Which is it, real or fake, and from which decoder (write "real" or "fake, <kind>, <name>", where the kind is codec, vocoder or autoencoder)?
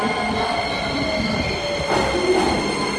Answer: real